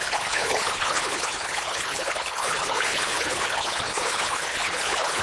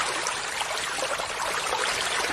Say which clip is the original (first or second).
second